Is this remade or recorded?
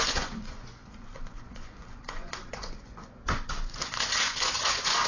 remade